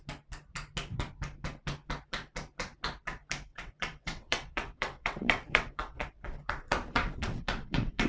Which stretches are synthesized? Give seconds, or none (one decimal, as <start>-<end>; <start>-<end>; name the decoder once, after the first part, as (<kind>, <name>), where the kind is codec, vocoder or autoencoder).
3.5-6.0 (vocoder, WaveNeXt); 7.0-8.1